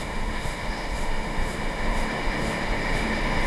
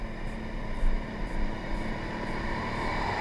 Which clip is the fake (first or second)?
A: first